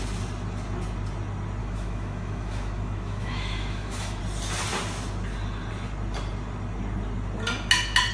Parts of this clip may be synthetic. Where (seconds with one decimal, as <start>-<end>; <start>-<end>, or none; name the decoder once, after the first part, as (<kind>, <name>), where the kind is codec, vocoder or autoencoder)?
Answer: 1.6-4.2 (autoencoder, DAC-VAE)